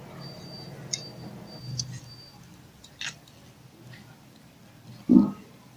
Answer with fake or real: real